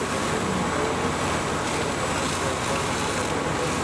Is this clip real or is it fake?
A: real